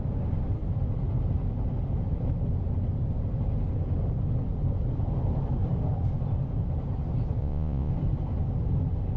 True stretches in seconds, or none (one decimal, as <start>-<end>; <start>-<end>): 0.0-7.4; 7.9-9.2